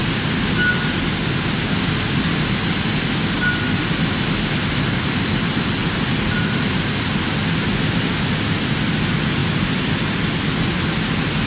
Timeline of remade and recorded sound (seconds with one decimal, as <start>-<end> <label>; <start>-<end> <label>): 0.0-11.5 recorded